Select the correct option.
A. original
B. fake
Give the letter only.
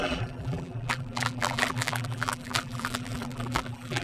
B